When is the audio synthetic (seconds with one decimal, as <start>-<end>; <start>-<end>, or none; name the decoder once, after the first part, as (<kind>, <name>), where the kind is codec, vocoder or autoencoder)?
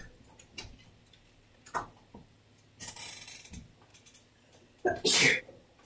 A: none